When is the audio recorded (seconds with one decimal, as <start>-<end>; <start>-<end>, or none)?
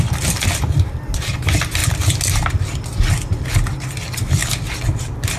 0.0-5.4